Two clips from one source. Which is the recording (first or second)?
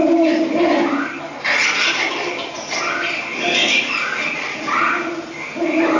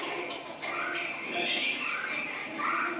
second